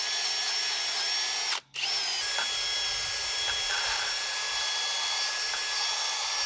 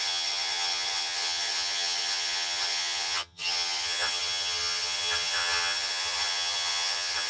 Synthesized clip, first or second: second